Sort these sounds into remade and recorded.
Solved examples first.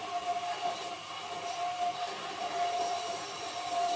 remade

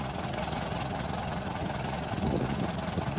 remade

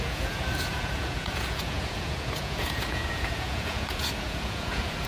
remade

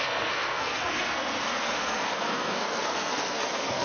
remade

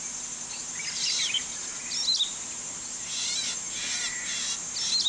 recorded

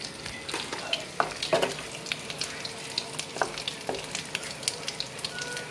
recorded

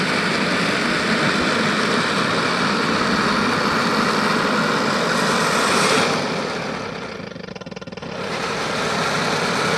recorded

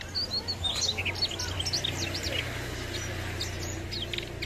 recorded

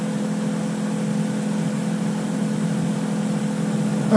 recorded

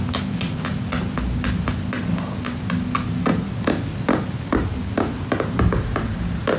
recorded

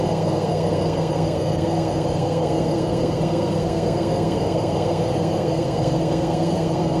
remade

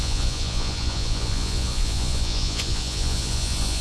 remade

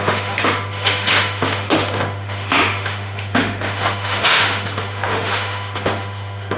remade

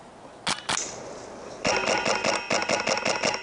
recorded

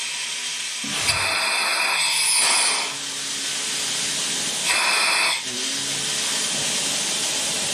recorded